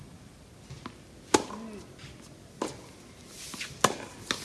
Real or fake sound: real